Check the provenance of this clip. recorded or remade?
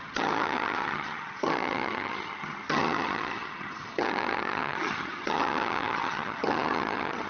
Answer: remade